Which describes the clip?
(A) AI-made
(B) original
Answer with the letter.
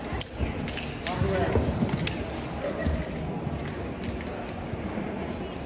B